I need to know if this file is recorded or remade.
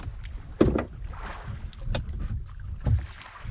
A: recorded